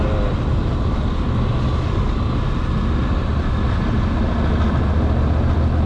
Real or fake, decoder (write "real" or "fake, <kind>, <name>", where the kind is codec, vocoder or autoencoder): real